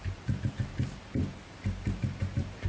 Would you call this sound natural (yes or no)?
no